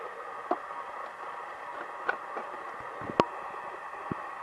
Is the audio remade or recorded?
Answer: recorded